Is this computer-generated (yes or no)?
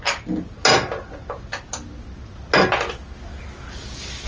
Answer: no